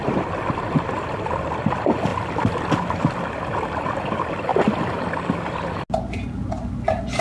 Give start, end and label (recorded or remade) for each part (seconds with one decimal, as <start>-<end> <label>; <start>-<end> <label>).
0.0-7.2 recorded